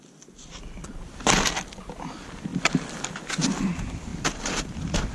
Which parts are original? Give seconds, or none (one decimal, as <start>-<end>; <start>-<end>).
0.0-5.1

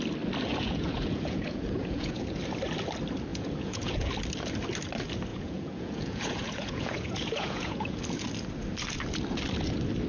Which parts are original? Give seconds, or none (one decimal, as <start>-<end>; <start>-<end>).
0.0-0.5; 2.4-3.3; 4.1-5.3; 8.0-10.1

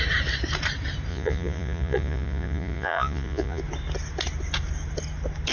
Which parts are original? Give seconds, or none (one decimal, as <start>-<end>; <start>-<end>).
0.0-1.1; 3.6-5.5

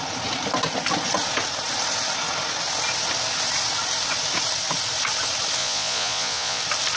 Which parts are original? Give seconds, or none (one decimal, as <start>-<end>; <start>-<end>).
0.0-5.6; 6.6-7.0